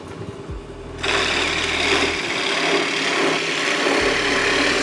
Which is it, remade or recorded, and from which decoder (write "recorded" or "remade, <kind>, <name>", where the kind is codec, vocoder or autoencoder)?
recorded